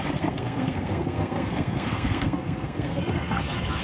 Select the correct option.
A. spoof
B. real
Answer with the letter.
A